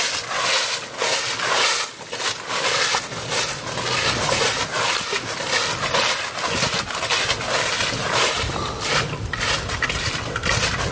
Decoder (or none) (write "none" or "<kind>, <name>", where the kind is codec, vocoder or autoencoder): none